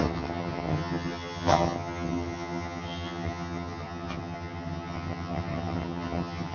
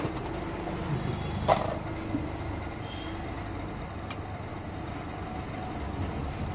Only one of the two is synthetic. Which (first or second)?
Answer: first